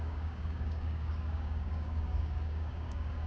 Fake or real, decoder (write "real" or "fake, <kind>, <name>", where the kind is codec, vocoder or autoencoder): fake, codec, DAC